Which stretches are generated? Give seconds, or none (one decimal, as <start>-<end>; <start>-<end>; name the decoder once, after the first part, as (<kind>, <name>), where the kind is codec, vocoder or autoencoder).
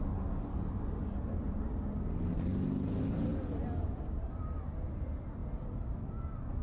3.3-4.0 (vocoder, Vocos)